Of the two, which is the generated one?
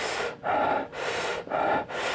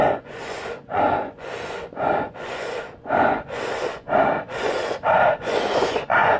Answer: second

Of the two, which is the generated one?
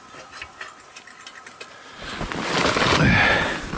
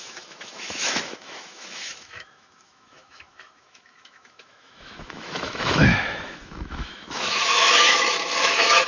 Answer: second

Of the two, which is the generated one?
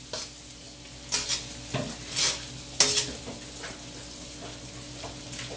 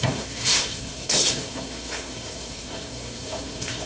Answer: second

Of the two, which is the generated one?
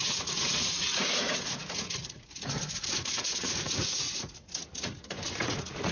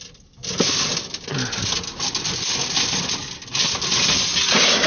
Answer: first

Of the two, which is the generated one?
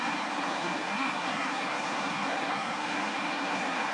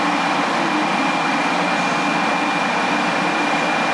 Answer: first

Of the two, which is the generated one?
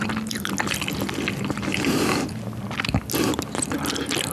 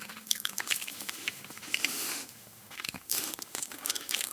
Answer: second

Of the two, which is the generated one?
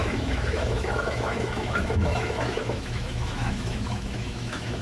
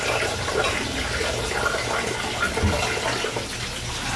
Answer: first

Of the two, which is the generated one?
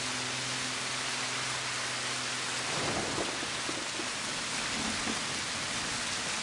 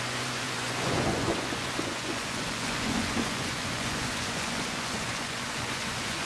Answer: second